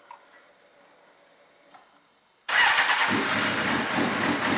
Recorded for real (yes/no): no